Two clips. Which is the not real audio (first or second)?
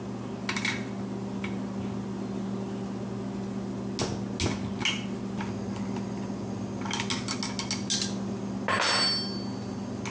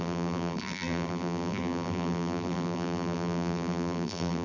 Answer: second